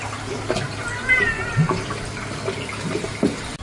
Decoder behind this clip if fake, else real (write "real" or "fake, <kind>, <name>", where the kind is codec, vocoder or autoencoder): real